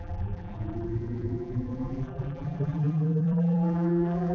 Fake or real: fake